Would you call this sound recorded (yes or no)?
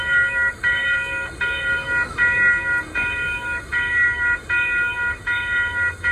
no